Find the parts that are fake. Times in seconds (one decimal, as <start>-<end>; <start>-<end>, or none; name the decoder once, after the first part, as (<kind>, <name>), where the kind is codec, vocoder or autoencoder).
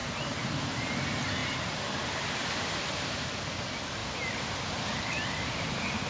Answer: 0.0-4.0 (vocoder, BigVGAN v2)